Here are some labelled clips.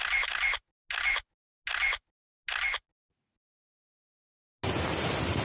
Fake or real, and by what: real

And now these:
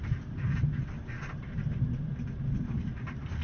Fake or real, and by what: real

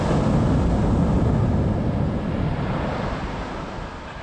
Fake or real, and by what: real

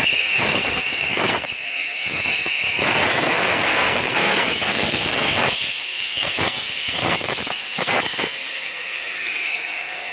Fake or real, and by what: fake, codec, SNAC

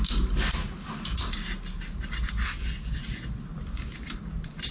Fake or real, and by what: real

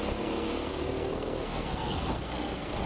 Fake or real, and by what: fake, codec, SNAC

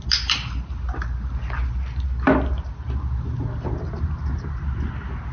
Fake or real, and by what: real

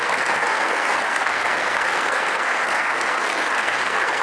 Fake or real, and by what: fake, codec, SNAC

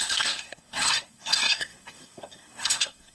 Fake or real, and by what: fake, codec, SNAC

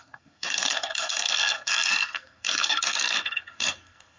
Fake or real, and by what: fake, codec, SNAC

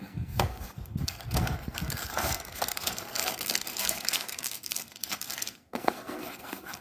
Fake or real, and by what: fake, codec, SNAC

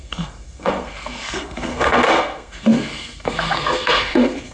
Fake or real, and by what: fake, codec, SNAC